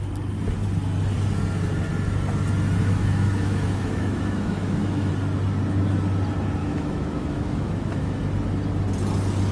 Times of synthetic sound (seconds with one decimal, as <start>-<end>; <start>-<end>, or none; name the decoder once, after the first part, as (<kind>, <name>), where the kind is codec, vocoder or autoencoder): 2.8-5.1 (autoencoder, DAC-VAE); 6.6-8.2